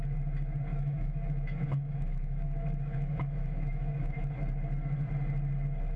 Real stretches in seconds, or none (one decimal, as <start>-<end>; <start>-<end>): 0.0-0.7; 4.3-6.0